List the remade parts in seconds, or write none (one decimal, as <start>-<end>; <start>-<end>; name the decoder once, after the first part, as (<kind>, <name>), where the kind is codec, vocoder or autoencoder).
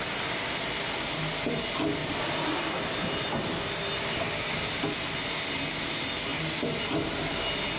none